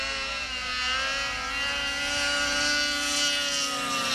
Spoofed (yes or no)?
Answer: no